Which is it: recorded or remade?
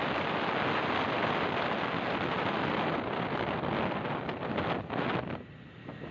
recorded